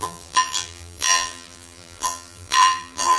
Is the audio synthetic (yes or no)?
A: yes